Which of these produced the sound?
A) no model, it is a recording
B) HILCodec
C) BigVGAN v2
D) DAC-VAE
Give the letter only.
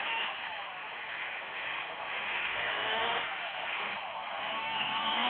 D